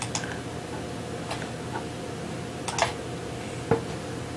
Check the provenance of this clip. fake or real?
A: real